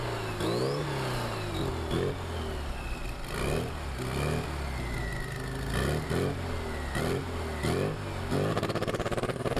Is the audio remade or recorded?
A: recorded